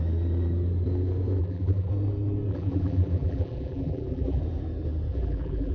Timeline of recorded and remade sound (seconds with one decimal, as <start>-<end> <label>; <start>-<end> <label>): 0.0-1.4 recorded; 1.4-1.9 remade; 1.9-2.5 recorded; 2.5-4.4 remade; 4.4-5.1 recorded; 5.1-5.7 remade